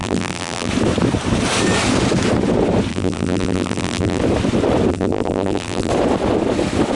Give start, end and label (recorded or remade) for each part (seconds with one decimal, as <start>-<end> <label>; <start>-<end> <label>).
0.0-0.7 remade; 0.7-2.9 recorded; 2.9-4.2 remade; 4.2-4.9 recorded; 4.9-5.9 remade; 5.9-6.9 recorded